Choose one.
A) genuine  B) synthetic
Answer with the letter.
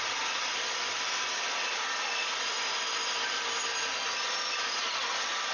A